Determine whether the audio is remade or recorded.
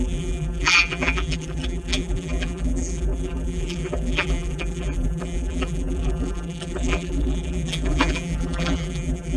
remade